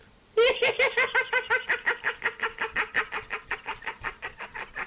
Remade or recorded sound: recorded